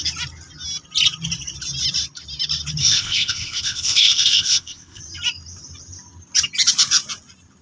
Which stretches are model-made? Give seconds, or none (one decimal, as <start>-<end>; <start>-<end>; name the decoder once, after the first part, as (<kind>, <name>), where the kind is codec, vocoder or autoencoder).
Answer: 2.8-5.0 (codec, ZipCodec)

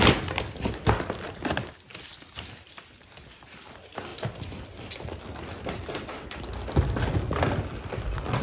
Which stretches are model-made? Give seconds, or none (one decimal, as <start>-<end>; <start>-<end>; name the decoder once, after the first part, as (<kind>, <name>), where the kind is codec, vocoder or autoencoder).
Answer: none

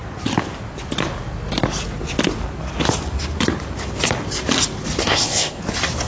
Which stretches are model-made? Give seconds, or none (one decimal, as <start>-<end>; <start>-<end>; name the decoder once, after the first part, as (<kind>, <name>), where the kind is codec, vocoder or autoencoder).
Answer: 5.0-5.6 (codec, ZipCodec)

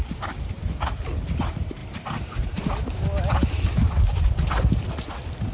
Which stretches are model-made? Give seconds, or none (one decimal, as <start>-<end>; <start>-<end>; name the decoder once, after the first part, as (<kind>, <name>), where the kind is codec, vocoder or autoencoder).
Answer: none

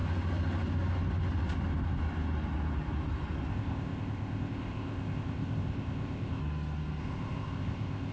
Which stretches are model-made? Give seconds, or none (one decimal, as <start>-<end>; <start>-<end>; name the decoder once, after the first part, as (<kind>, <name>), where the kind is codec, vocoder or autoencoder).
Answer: 3.5-6.4 (codec, ZipCodec); 7.0-8.1

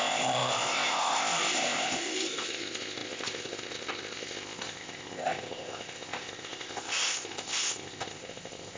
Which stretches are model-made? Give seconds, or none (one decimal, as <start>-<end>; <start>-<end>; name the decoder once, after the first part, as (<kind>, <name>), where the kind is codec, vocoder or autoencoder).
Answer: 0.0-8.8 (codec, ZipCodec)

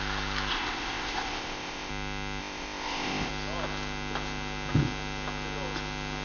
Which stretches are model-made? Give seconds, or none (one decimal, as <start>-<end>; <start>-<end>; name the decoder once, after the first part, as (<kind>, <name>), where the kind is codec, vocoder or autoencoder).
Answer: 0.5-1.9 (codec, ZipCodec); 2.4-3.3

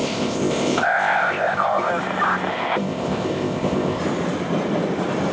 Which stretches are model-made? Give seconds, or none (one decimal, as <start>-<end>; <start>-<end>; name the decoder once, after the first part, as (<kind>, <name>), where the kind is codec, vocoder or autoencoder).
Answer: 0.0-1.9 (codec, ZipCodec); 2.5-4.0